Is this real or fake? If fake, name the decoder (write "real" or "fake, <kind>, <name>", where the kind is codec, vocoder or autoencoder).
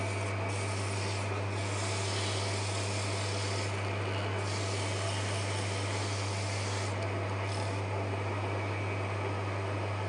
real